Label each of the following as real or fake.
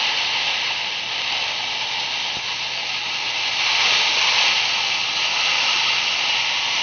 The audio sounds real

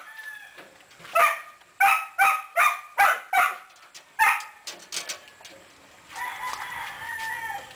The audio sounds real